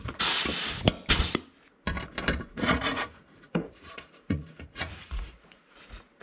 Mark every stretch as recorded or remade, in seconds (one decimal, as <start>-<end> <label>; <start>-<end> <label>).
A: 0.0-0.4 remade; 0.4-2.5 recorded; 2.5-6.2 remade